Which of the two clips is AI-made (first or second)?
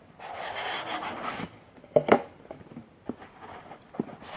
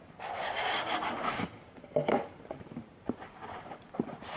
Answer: second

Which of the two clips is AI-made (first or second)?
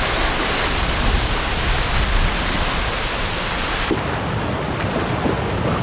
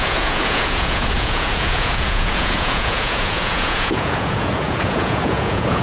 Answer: second